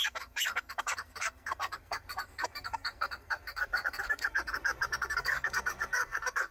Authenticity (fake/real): fake